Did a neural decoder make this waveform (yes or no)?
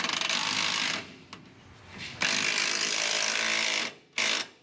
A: no